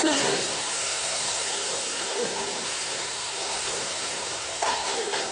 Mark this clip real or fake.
fake